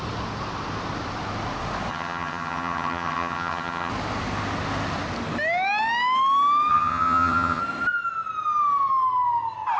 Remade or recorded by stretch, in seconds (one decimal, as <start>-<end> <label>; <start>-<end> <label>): 0.0-1.9 recorded; 1.9-3.9 remade; 3.9-6.7 recorded; 6.7-7.6 remade; 7.6-9.8 recorded